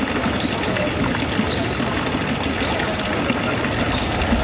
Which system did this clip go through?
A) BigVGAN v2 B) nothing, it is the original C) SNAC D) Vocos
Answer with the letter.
B